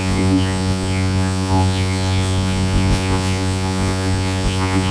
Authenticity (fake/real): fake